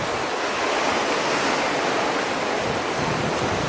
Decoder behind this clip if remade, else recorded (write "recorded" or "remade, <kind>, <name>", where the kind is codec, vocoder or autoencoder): recorded